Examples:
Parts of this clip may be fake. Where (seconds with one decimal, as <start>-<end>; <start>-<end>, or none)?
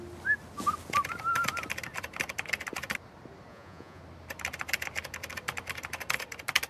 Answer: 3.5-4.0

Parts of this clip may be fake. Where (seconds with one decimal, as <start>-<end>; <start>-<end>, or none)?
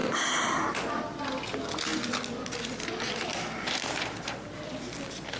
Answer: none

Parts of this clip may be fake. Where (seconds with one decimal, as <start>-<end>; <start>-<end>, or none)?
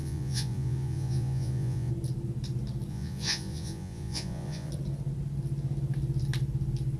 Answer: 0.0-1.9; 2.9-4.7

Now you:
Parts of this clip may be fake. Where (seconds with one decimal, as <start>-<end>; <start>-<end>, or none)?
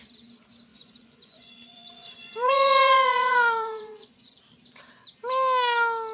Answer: 0.7-4.4